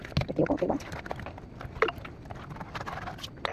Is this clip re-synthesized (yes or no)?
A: no